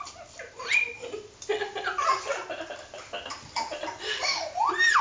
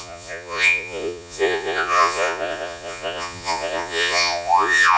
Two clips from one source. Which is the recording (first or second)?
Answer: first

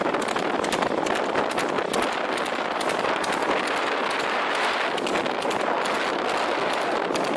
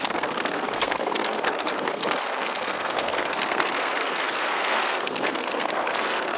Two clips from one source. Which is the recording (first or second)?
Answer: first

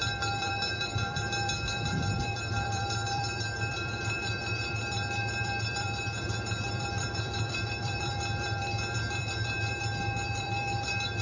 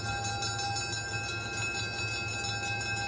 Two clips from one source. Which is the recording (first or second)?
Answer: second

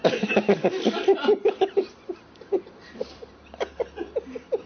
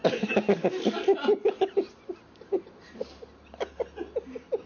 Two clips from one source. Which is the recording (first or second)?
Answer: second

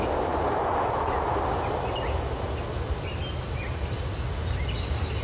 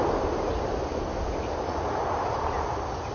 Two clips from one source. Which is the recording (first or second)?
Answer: first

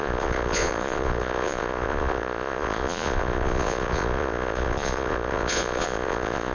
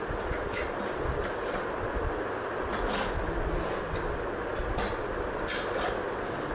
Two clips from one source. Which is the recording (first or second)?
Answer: second